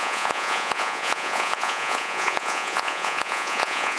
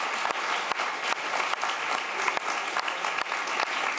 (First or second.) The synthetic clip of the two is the first